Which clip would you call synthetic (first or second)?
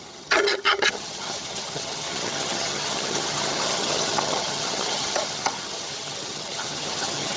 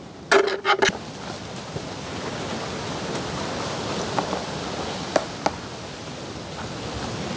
first